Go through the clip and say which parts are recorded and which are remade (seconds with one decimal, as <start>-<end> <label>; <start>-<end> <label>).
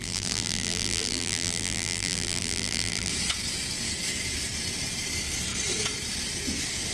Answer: 0.0-3.1 remade; 3.1-6.9 recorded